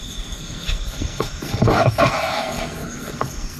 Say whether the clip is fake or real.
fake